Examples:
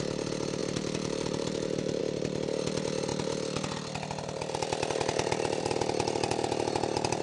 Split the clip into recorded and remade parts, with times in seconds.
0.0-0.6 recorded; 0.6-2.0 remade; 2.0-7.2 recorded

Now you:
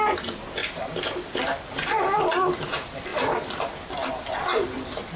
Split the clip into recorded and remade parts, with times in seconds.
0.0-4.5 recorded; 4.5-5.2 remade

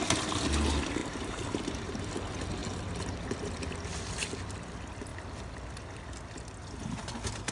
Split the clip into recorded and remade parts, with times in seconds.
0.0-1.0 recorded; 1.0-2.1 remade; 2.1-7.5 recorded

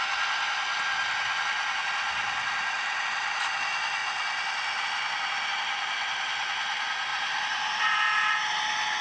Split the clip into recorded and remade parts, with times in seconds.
0.0-7.1 recorded; 7.1-7.8 remade; 7.8-9.0 recorded

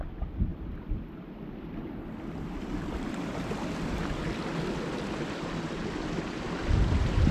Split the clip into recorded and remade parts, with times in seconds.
0.0-0.5 remade; 0.5-3.1 recorded; 3.1-7.3 remade

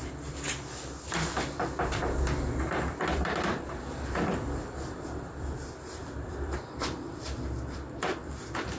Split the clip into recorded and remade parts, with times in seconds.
0.0-2.9 recorded; 2.9-8.8 remade

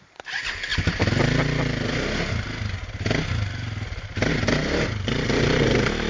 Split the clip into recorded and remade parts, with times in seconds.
0.0-6.1 recorded

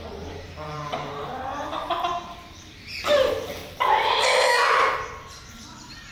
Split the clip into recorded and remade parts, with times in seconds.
0.0-3.6 remade; 3.6-5.3 recorded; 5.3-6.1 remade